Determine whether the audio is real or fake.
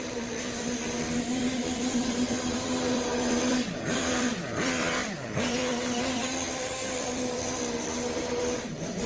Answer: fake